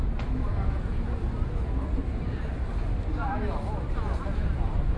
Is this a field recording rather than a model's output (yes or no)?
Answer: yes